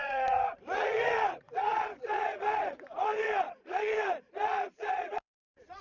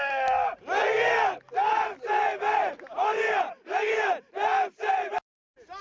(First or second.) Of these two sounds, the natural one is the second